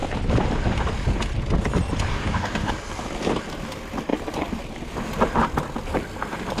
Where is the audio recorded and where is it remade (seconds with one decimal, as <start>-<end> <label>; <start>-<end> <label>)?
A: 0.0-2.1 recorded; 2.1-2.7 remade; 2.7-6.6 recorded